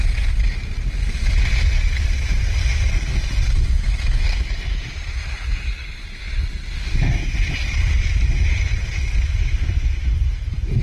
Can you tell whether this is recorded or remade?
recorded